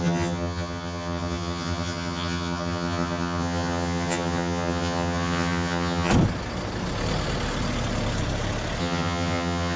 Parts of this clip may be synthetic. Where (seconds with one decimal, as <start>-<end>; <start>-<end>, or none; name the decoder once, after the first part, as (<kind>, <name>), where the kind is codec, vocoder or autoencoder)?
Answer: 0.0-6.1 (vocoder, HiFi-GAN); 8.8-9.8